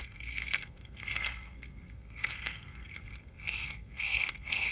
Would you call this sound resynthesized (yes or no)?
yes